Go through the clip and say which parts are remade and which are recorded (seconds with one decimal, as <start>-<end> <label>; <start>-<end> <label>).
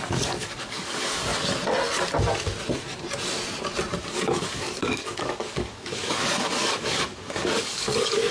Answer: 0.0-1.3 remade; 1.3-4.0 recorded; 4.0-8.3 remade